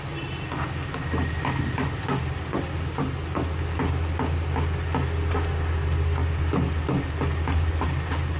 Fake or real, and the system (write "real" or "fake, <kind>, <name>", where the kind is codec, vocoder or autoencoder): real